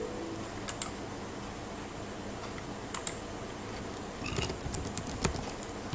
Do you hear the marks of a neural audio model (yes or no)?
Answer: no